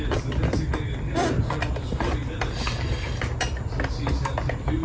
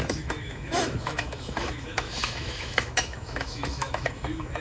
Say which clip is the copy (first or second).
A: second